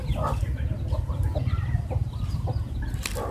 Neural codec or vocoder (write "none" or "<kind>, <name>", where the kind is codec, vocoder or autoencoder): none